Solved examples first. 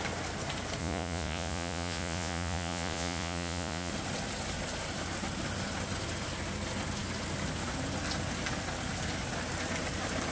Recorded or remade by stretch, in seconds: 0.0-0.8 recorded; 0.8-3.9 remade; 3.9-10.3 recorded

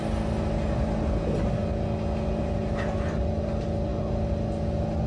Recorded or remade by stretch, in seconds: 0.0-5.1 recorded

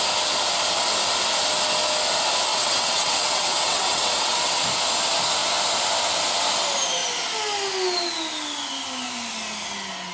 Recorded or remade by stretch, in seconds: 0.0-2.5 recorded; 2.5-4.6 remade; 4.6-10.1 recorded

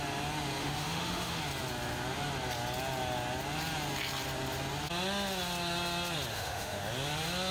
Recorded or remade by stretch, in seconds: 0.0-0.6 recorded; 0.6-1.4 remade; 1.4-6.3 recorded; 6.3-6.8 remade; 6.8-7.5 recorded

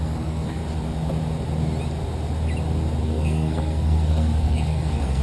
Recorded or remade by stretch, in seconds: 0.0-0.6 remade; 0.6-3.0 recorded; 3.0-5.2 remade